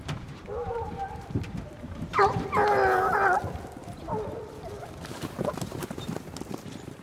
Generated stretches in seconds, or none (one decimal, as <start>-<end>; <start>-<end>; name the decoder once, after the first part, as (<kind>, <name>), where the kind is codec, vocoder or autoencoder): 0.0-2.6 (vocoder, BigVGAN v2); 5.1-7.0